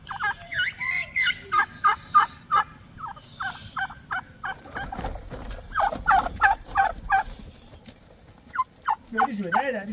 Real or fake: real